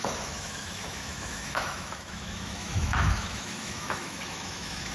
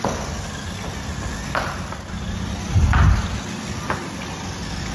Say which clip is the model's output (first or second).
first